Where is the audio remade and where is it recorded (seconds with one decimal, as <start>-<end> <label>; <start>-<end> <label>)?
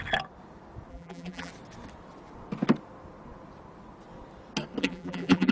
0.0-0.9 recorded; 0.9-1.5 remade; 1.5-4.8 recorded; 4.8-5.5 remade